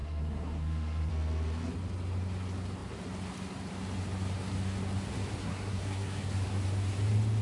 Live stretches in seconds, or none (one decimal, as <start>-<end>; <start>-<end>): 1.1-5.4; 6.3-7.4